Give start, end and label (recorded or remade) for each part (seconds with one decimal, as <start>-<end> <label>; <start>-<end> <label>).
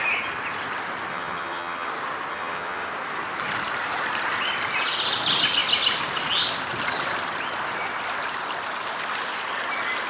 0.0-1.1 recorded; 1.1-1.9 remade; 1.9-2.3 recorded; 2.3-2.9 remade; 2.9-10.1 recorded